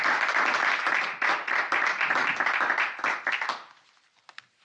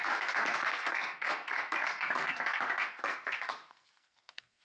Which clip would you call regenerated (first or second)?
second